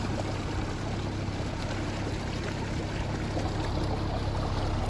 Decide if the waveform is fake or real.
real